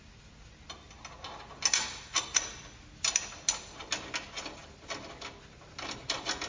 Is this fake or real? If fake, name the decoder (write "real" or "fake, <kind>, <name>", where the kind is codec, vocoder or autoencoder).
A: real